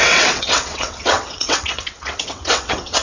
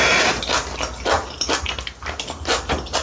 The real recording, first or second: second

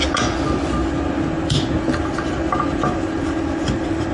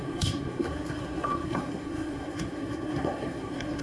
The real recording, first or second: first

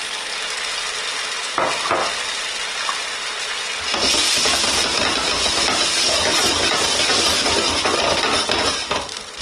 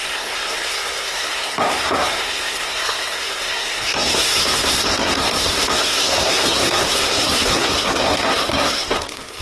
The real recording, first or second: first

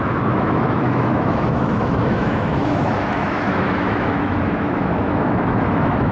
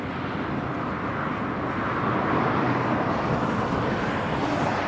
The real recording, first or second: second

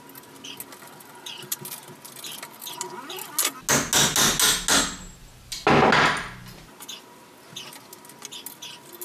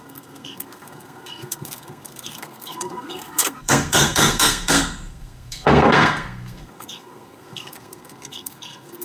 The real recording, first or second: first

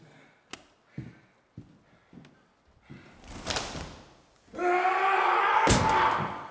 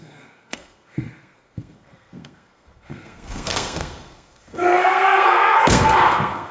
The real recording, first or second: first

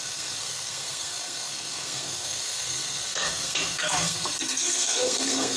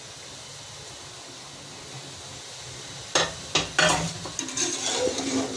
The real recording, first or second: second